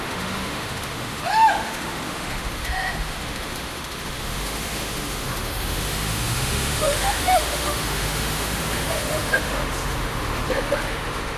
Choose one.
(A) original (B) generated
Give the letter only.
B